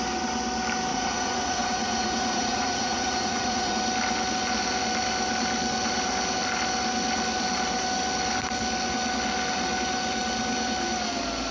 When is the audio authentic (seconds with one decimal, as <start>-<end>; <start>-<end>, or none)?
0.0-0.9; 3.7-11.5